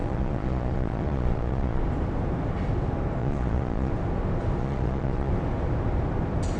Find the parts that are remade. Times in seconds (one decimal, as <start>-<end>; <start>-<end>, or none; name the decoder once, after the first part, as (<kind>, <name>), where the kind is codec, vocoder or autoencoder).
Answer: 0.0-1.8 (vocoder, Vocos); 3.2-3.9; 4.6-5.3